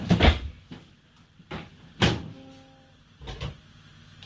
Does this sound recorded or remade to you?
recorded